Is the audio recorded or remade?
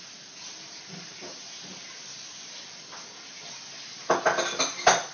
recorded